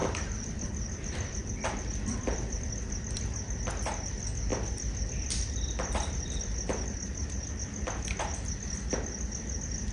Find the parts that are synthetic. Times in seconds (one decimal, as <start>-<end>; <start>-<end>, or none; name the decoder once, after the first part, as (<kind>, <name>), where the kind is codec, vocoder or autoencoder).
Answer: 0.0-2.6 (vocoder, BigVGAN v2); 4.5-6.4